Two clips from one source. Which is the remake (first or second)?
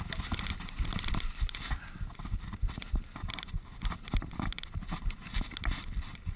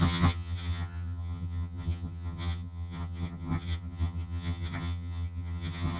second